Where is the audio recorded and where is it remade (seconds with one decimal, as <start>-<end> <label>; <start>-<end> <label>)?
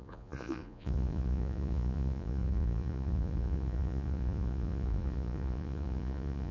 0.0-6.5 remade